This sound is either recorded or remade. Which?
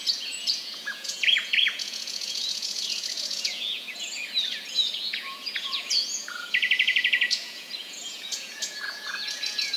remade